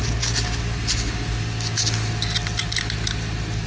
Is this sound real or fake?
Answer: real